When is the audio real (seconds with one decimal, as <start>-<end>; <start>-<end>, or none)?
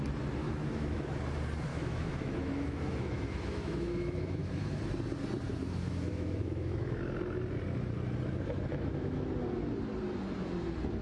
0.0-0.4; 1.2-1.7; 4.8-5.5; 7.0-8.7; 9.3-11.0